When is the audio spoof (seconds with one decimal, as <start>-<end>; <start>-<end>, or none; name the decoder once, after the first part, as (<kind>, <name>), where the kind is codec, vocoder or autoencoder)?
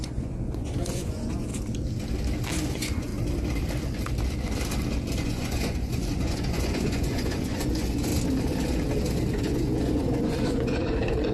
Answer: 0.0-1.5 (vocoder, Vocos); 2.7-3.1; 5.2-8.1; 9.3-11.3